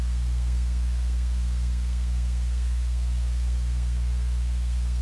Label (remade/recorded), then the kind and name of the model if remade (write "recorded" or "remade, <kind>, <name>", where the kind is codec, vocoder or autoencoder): remade, codec, SNAC